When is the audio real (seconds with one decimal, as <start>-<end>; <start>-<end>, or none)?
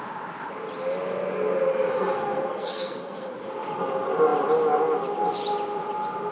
0.0-1.7; 3.5-6.3